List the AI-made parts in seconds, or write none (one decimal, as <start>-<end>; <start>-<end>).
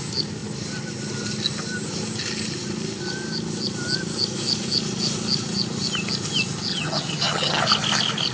6.7-7.6